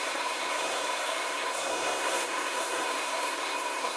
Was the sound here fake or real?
fake